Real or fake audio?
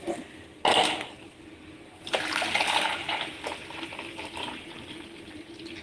real